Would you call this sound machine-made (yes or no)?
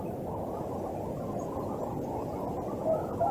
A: no